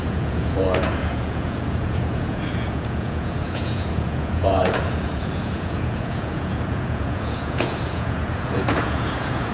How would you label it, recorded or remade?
remade